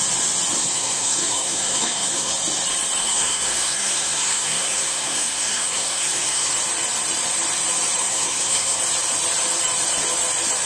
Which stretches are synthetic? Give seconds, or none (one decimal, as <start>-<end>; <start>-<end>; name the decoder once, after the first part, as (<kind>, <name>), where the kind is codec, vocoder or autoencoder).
0.6-2.3 (codec, SNAC); 3.0-6.5; 8.0-8.8